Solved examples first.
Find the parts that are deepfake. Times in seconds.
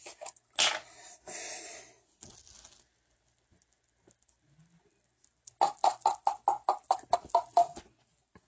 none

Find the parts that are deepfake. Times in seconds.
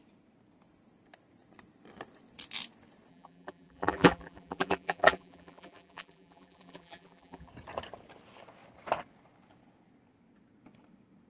3.1-7.5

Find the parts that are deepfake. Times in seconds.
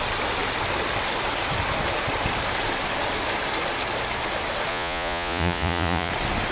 4.7-6.1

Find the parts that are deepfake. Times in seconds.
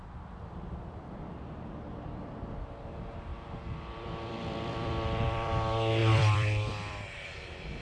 3.3-5.5; 6.0-7.8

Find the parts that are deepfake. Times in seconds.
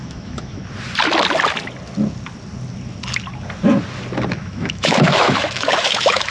0.0-0.6; 4.3-6.3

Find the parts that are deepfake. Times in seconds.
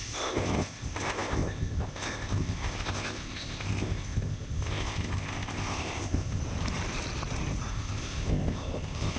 0.0-6.4; 7.7-9.2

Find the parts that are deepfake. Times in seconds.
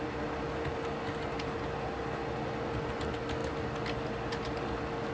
none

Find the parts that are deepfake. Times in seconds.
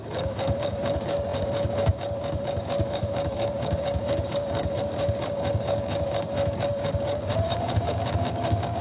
0.0-8.8